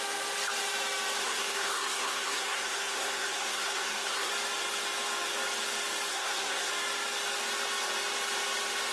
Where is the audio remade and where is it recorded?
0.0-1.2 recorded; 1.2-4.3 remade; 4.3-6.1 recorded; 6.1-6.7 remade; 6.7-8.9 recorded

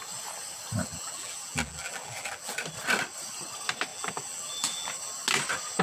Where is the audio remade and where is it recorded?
0.0-0.8 recorded; 0.8-2.5 remade; 2.5-3.9 recorded; 3.9-5.1 remade; 5.1-5.8 recorded

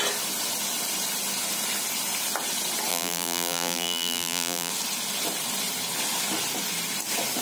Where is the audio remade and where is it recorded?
0.0-2.9 recorded; 2.9-4.7 remade; 4.7-7.4 recorded

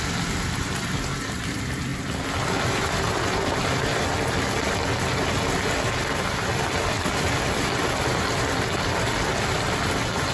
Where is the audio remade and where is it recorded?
0.0-1.9 remade; 1.9-2.9 recorded; 2.9-3.9 remade; 3.9-6.4 recorded; 6.4-10.3 remade